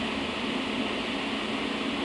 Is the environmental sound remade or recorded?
recorded